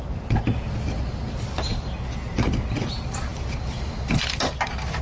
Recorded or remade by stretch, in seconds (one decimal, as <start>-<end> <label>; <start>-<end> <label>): 0.0-5.0 recorded